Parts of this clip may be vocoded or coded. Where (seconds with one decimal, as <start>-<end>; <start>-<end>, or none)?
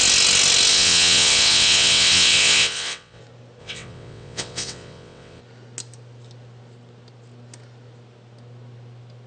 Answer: 0.7-3.2; 3.6-5.4